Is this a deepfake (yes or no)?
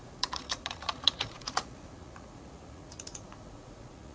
yes